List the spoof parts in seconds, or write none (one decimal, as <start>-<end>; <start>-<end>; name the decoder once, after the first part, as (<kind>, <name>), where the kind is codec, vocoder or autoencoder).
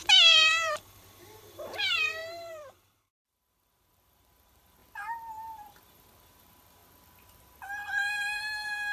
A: 0.0-4.8 (vocoder, BigVGAN v2); 5.4-6.8; 8.4-8.9